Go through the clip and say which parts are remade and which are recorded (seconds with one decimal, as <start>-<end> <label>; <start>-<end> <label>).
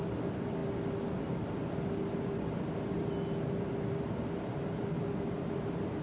0.0-6.0 recorded